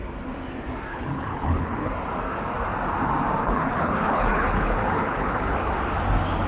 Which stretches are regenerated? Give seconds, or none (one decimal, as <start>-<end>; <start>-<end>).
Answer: 0.9-1.9; 3.4-5.7